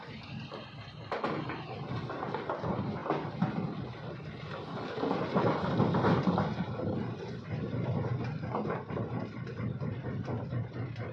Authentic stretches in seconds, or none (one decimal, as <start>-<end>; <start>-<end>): 0.0-11.1